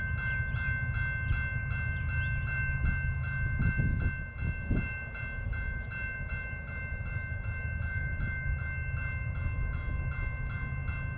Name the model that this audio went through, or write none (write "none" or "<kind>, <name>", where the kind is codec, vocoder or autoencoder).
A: none